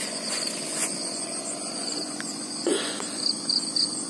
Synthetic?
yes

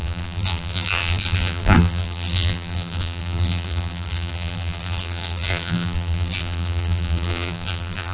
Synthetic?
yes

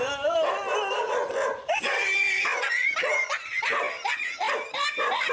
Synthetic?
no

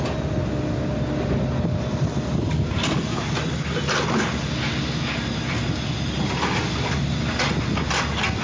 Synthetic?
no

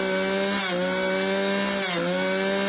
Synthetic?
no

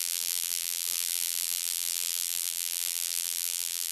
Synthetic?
yes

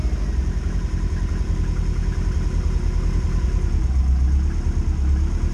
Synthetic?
no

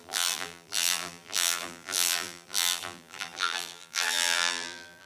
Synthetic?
yes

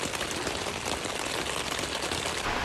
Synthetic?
no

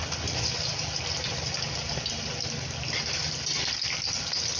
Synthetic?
no